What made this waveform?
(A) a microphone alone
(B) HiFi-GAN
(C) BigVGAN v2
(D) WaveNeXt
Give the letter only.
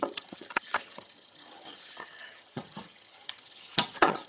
B